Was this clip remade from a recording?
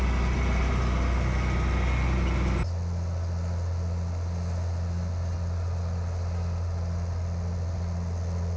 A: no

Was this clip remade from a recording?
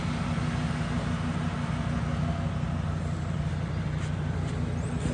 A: no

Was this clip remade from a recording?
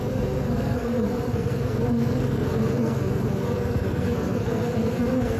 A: yes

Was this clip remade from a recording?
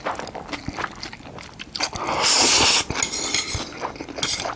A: no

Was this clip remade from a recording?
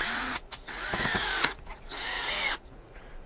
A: yes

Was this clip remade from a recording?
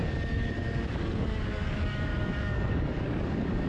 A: yes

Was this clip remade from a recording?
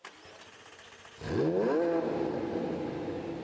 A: no